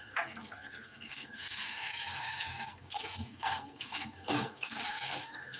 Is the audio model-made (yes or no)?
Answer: yes